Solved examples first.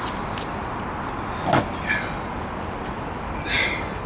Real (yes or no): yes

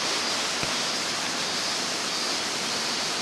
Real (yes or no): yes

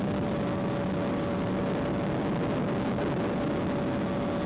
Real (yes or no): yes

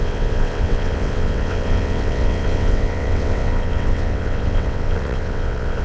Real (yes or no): no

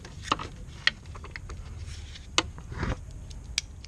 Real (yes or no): yes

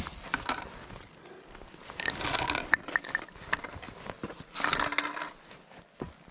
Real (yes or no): yes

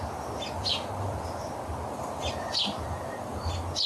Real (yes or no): yes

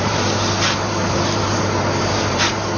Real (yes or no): no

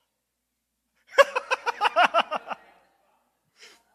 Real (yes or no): yes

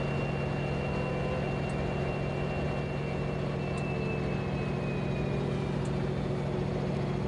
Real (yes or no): yes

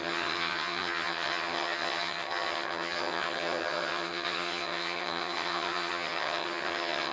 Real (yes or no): no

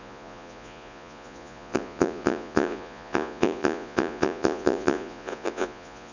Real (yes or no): no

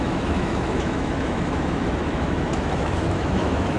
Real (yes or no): no